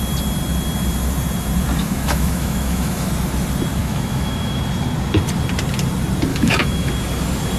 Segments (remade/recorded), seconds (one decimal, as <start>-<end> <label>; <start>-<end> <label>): 0.0-1.8 recorded; 1.8-3.1 remade; 3.1-3.8 recorded; 3.8-4.6 remade; 4.6-6.3 recorded; 6.3-6.9 remade; 6.9-7.6 recorded